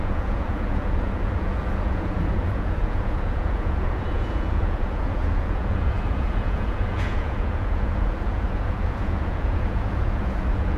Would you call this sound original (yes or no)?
no